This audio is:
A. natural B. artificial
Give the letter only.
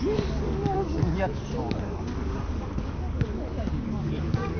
B